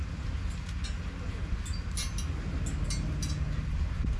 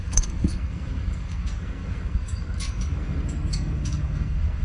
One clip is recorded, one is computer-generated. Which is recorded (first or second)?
first